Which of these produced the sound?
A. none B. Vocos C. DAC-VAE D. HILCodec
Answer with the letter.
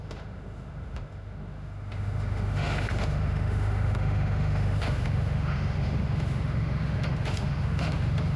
C